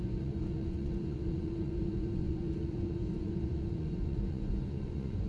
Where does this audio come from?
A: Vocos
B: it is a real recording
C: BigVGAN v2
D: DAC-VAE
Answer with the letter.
A